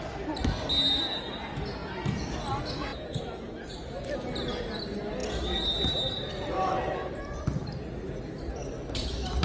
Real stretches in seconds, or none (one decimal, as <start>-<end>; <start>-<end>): 0.0-9.4